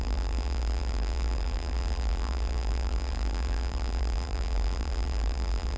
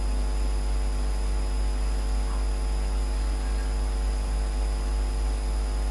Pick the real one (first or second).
second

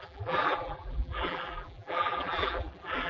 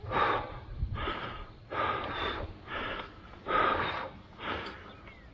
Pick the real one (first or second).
second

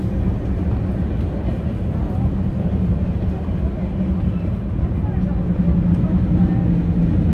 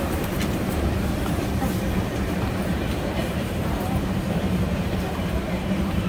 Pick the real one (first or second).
first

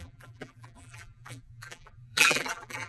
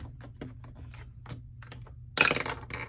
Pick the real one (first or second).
second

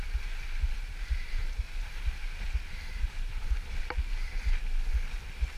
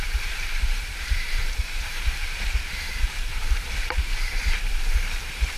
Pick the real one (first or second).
first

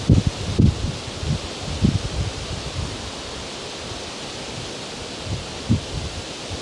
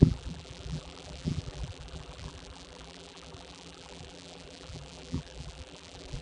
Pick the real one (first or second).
first